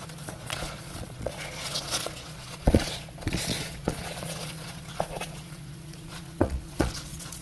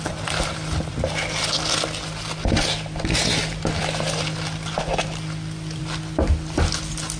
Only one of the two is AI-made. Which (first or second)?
first